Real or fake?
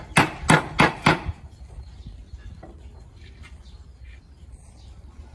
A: real